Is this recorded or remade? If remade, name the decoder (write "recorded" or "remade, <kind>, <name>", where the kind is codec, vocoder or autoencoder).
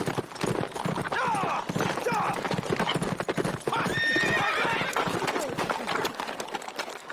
recorded